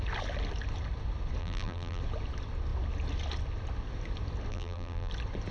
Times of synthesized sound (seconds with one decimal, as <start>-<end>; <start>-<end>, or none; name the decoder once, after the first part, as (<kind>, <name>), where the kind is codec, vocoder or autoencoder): 1.4-2.0 (vocoder, BigVGAN v2); 4.5-5.1

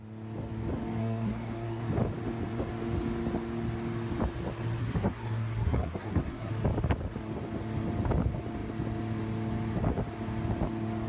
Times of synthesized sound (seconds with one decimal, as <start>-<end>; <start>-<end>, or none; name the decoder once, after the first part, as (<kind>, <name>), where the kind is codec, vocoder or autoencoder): 1.0-1.8 (codec, SNAC); 4.8-6.5

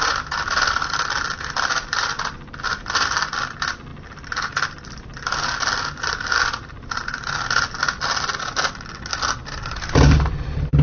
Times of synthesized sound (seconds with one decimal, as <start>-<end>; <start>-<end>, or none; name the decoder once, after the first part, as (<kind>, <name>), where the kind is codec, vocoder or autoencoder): 0.0-2.0 (vocoder, BigVGAN v2); 2.5-3.9; 9.1-10.8

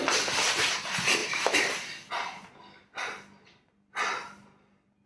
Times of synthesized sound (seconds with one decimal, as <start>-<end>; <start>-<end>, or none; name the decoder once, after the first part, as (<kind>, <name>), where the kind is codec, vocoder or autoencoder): 1.2-2.1 (vocoder, BigVGAN v2)